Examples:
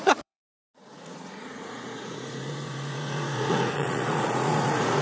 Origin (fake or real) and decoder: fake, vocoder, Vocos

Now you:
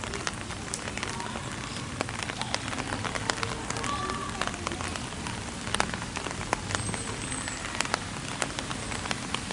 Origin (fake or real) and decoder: real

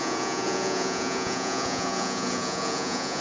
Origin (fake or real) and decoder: fake, vocoder, Vocos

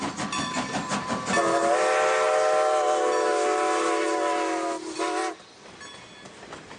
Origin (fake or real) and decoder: real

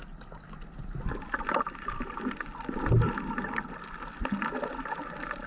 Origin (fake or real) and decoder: real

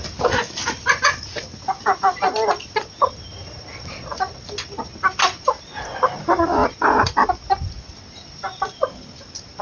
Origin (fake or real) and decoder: real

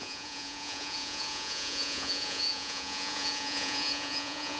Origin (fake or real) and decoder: fake, vocoder, Vocos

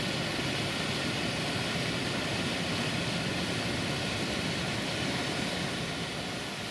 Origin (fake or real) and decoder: real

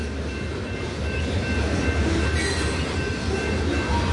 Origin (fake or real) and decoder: real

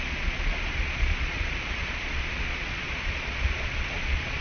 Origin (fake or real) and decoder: fake, vocoder, Vocos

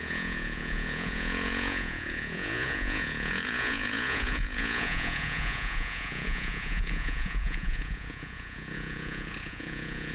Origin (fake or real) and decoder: fake, vocoder, Vocos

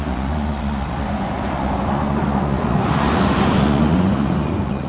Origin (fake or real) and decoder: fake, vocoder, Vocos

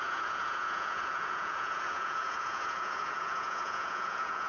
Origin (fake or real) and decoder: fake, vocoder, Vocos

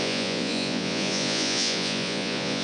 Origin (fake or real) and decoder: fake, vocoder, Vocos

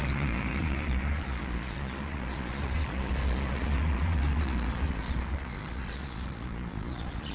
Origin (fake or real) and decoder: fake, vocoder, Vocos